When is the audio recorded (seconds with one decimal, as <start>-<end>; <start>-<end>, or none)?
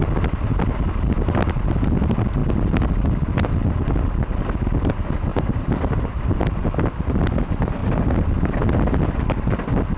0.0-2.4; 3.8-5.3; 6.6-7.8; 8.5-10.0